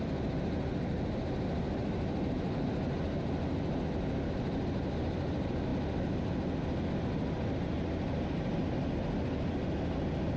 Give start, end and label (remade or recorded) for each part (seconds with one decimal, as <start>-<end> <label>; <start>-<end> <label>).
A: 0.0-10.4 recorded